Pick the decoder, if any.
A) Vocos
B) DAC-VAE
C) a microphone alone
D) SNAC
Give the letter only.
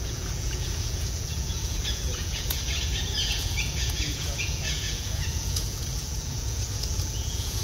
A